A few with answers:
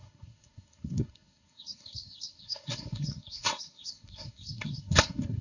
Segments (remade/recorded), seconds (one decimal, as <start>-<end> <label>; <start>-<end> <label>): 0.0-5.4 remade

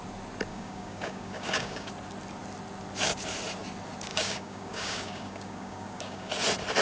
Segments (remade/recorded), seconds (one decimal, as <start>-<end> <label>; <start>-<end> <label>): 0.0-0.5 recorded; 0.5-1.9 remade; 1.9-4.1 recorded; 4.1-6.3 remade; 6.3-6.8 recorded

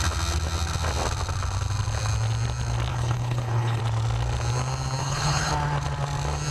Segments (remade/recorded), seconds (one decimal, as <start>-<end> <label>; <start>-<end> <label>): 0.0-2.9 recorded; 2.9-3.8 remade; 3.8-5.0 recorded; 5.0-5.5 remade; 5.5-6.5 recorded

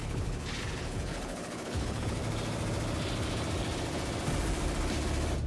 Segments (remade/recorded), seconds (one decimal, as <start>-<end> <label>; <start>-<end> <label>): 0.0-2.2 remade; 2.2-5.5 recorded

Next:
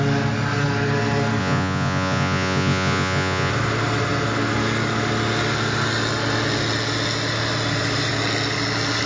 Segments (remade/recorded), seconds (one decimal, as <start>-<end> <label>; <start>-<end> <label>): 0.0-1.4 recorded; 1.4-3.5 remade; 3.5-9.1 recorded

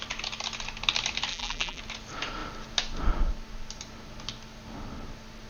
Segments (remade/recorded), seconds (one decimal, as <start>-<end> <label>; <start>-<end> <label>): 0.0-1.3 recorded; 1.3-1.8 remade; 1.8-5.5 recorded

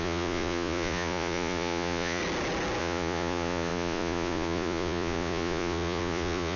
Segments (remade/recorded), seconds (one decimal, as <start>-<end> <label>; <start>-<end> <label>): 0.0-2.2 remade; 2.2-2.8 recorded; 2.8-6.6 remade

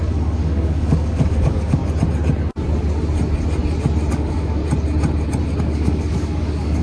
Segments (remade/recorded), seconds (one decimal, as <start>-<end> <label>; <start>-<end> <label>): 0.0-1.8 remade; 1.8-4.1 recorded; 4.1-4.6 remade; 4.6-5.6 recorded; 5.6-6.8 remade